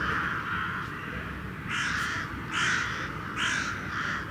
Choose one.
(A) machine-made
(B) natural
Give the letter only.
B